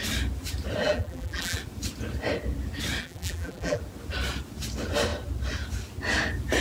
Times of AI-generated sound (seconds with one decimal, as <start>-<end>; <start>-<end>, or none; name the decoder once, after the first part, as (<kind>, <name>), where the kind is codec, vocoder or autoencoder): 0.8-1.6 (vocoder, BigVGAN v2); 3.0-3.8

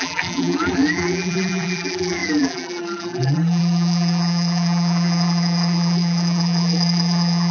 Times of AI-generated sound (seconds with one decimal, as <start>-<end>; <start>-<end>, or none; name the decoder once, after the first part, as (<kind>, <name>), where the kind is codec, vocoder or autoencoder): 0.0-7.5 (vocoder, BigVGAN v2)

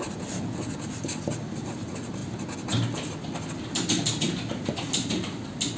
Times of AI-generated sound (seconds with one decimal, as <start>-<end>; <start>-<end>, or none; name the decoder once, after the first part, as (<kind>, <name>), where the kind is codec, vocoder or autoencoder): none

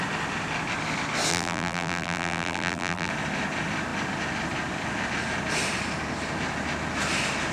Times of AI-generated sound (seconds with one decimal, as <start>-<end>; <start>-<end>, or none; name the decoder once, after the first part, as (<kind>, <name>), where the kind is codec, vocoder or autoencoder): 1.3-3.1 (vocoder, BigVGAN v2)

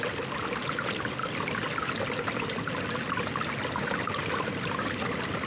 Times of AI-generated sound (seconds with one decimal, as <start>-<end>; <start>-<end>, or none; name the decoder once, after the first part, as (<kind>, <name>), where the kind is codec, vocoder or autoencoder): none

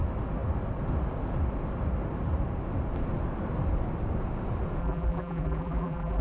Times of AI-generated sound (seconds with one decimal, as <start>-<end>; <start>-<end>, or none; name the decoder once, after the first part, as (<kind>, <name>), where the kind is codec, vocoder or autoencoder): 4.8-6.2 (vocoder, BigVGAN v2)

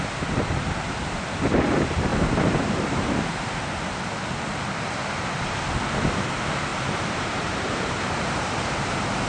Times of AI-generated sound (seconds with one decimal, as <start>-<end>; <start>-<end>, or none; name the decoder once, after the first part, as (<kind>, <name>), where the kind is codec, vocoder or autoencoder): 2.1-3.6 (vocoder, BigVGAN v2); 6.7-8.0

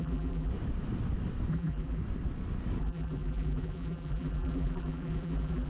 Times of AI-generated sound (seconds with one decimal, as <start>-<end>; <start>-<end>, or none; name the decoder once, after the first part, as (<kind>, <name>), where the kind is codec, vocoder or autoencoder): 0.0-0.5 (vocoder, BigVGAN v2); 1.5-2.0; 2.8-5.7